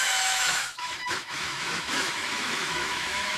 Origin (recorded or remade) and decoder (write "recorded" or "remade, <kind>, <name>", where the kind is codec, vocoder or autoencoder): remade, autoencoder, DAC-VAE